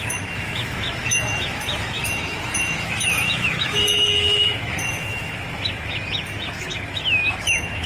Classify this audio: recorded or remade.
remade